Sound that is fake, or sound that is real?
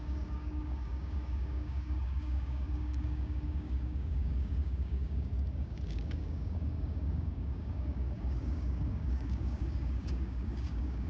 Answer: fake